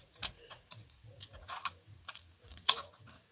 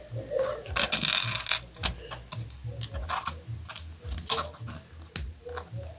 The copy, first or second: first